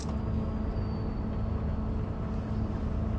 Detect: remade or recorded recorded